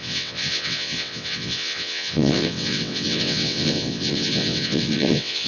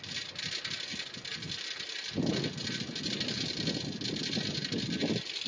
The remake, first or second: first